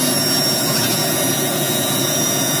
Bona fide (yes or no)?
no